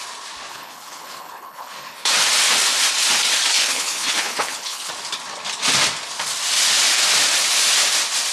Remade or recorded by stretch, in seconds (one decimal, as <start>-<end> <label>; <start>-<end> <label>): 0.0-0.5 recorded; 0.5-2.1 remade; 2.1-3.5 recorded; 3.5-4.9 remade; 4.9-8.3 recorded